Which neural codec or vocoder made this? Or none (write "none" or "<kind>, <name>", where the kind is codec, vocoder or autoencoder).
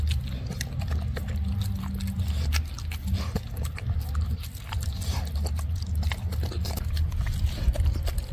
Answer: none